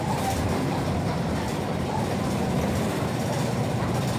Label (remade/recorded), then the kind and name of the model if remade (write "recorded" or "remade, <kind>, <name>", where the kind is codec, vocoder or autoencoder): remade, vocoder, BigVGAN v2